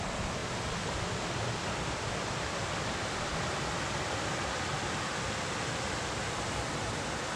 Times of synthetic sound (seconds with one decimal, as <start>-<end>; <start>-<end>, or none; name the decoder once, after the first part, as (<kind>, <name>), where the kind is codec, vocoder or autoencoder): none